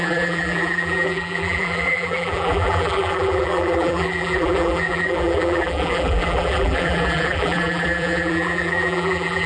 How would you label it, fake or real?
fake